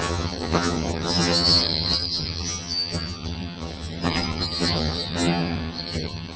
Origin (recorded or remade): remade